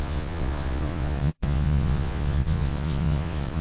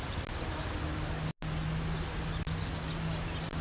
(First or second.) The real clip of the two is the second